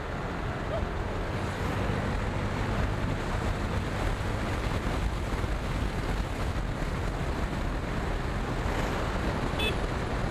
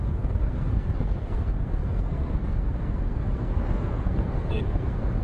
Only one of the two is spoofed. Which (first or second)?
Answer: second